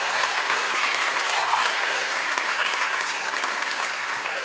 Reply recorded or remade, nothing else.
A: remade